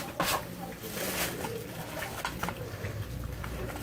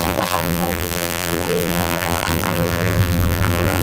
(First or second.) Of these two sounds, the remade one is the second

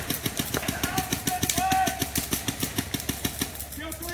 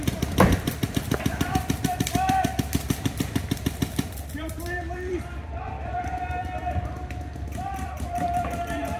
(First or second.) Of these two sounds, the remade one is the second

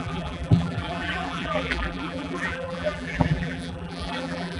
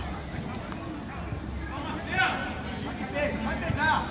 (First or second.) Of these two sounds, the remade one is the first